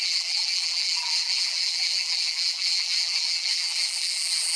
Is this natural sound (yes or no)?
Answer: no